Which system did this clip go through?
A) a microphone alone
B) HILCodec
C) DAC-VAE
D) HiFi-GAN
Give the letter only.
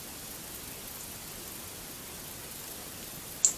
A